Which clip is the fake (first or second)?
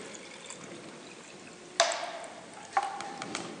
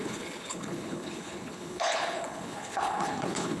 second